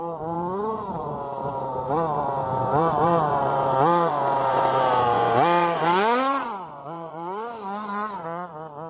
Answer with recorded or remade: remade